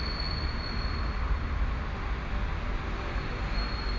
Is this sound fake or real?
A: real